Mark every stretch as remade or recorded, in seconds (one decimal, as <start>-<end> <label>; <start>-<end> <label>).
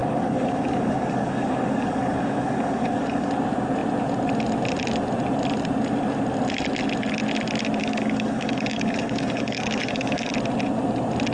0.0-3.3 remade; 3.3-7.8 recorded; 7.8-10.3 remade; 10.3-11.3 recorded